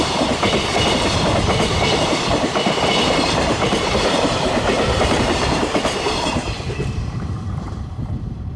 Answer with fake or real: fake